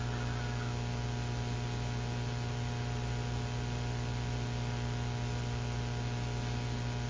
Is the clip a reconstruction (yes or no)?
no